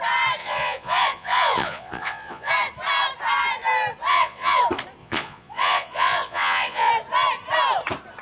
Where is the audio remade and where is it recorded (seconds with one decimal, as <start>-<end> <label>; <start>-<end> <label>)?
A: 0.0-0.4 recorded; 0.4-2.5 remade; 2.5-4.1 recorded; 4.1-4.6 remade; 4.6-5.0 recorded; 5.0-6.9 remade; 6.9-8.2 recorded